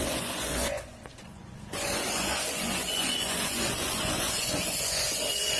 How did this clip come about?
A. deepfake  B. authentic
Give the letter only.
A